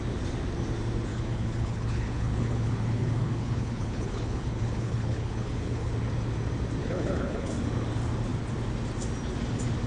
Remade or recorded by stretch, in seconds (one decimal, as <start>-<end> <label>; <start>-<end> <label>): 0.0-1.1 recorded; 1.1-5.9 remade; 5.9-6.8 recorded; 6.8-7.5 remade; 7.5-9.9 recorded